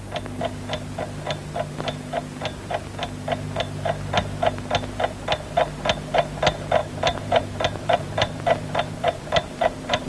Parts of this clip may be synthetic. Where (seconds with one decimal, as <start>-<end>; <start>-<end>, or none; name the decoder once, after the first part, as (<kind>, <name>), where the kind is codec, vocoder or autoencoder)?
6.8-10.1 (vocoder, BigVGAN v2)